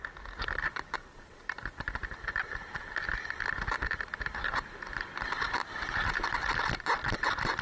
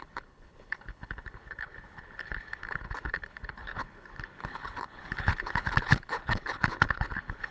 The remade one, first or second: second